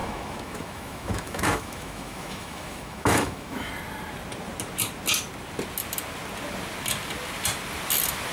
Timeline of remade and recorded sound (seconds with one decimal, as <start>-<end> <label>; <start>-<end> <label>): 0.0-3.7 remade; 3.7-8.3 recorded